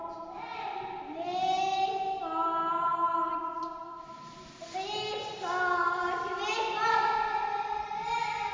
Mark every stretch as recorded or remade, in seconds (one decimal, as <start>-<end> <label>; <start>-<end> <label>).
0.0-8.5 recorded